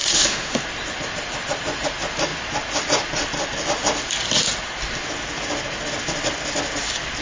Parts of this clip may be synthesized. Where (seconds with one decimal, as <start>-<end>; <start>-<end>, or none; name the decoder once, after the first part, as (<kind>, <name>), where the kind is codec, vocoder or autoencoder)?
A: 0.0-0.6 (autoencoder, DAC-VAE)